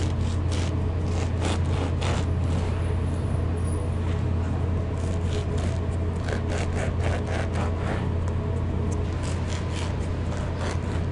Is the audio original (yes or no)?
yes